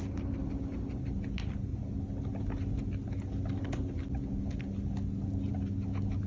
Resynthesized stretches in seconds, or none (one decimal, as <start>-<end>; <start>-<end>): none